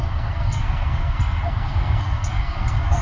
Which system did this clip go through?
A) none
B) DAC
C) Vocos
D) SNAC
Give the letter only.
D